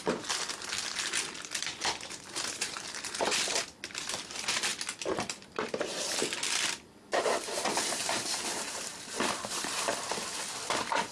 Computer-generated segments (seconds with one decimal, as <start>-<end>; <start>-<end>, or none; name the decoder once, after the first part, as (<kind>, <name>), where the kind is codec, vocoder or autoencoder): 0.0-4.7 (vocoder, BigVGAN v2); 7.1-11.1